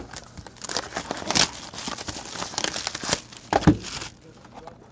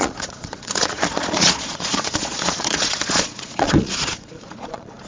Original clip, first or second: first